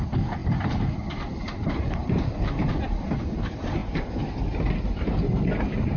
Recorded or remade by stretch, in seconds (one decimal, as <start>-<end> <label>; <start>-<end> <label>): 0.0-0.4 recorded; 0.4-1.1 remade; 1.1-2.0 recorded; 2.0-3.2 remade; 3.2-6.0 recorded